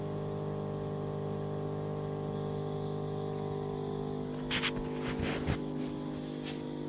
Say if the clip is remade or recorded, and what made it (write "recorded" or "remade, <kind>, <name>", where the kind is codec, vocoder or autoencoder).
recorded